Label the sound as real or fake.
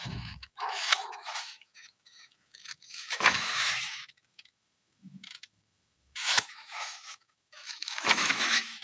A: fake